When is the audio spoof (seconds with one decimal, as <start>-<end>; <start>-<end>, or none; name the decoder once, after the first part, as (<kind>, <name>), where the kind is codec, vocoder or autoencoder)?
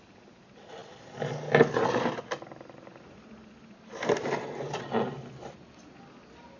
none